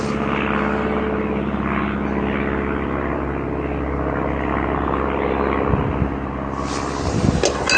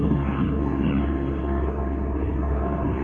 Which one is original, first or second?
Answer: first